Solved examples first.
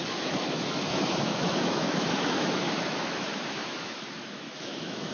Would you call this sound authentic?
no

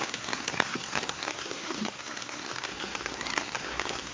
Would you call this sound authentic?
no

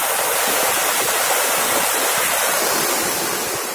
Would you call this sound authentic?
no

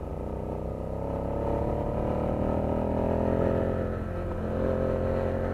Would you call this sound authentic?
yes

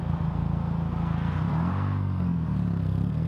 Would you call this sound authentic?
no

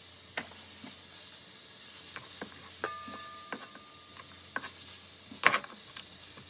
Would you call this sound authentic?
yes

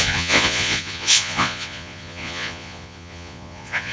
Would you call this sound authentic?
no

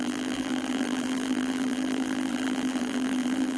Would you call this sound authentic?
no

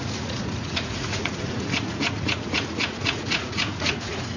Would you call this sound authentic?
no